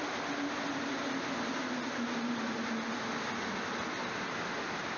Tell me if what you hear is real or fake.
real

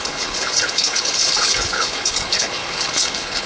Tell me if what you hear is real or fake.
fake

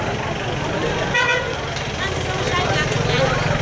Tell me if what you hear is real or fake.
real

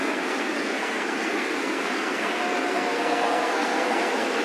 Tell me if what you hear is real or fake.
fake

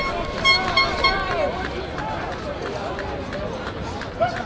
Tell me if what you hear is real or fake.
real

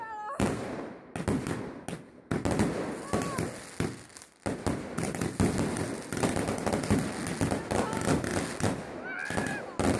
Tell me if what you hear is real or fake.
real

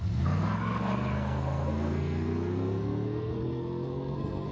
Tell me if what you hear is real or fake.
fake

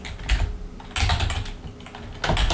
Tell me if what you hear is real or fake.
real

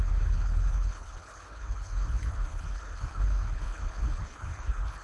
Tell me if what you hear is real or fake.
fake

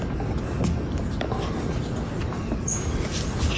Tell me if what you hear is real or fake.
real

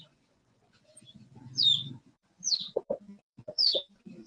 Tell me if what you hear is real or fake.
fake